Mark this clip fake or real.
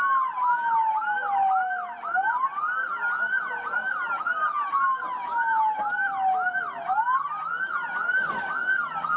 real